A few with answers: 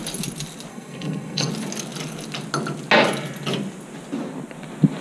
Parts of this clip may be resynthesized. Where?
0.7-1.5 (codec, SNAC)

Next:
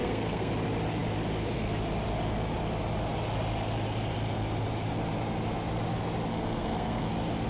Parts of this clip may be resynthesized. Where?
0.0-0.5 (codec, SNAC); 6.3-7.1

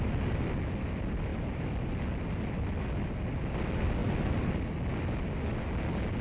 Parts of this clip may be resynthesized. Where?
none